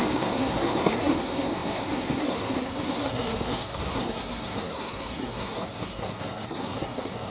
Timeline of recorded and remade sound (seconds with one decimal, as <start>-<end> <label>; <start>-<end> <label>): 0.0-7.3 remade